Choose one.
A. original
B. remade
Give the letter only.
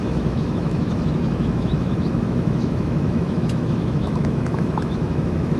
B